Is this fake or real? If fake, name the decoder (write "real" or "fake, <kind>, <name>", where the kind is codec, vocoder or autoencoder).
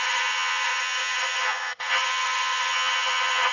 fake, vocoder, HiFi-GAN